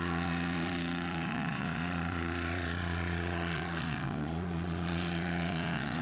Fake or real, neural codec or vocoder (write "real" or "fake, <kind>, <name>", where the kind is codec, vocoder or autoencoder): fake, vocoder, Vocos